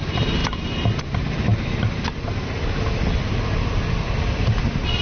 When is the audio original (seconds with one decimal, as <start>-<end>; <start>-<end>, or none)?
0.0-5.0